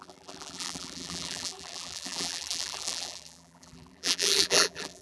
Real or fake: fake